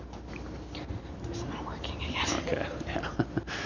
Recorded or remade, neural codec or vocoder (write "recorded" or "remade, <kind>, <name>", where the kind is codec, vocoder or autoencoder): recorded